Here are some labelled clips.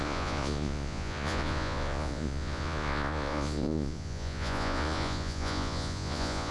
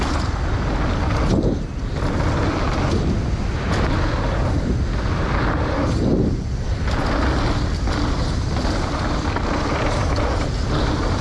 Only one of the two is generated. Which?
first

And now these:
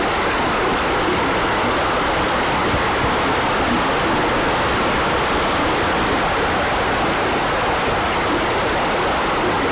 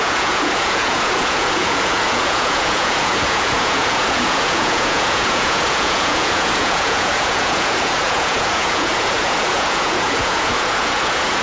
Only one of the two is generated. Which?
second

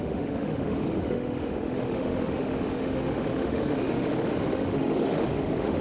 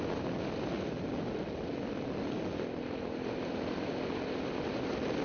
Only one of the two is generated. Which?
first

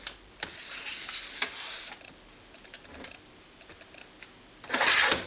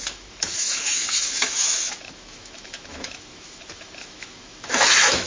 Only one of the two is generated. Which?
second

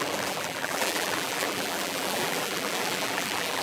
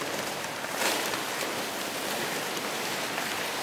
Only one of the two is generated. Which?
first